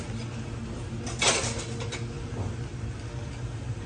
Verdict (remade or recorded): recorded